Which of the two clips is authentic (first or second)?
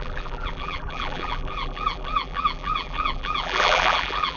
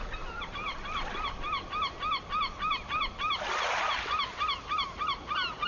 second